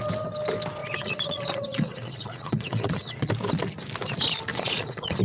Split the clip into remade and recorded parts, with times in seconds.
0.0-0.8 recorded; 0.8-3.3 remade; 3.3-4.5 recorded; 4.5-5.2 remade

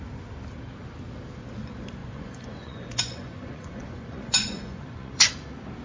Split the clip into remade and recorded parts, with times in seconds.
0.0-2.0 recorded; 2.0-5.3 remade; 5.3-5.8 recorded

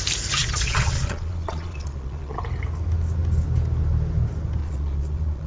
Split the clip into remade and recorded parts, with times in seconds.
0.0-0.4 recorded; 0.4-2.4 remade; 2.4-4.6 recorded; 4.6-5.5 remade